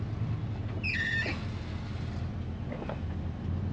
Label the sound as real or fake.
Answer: real